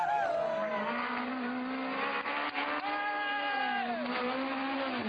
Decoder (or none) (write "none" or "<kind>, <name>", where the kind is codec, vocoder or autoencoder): none